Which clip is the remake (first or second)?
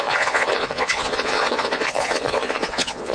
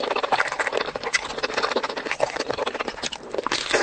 first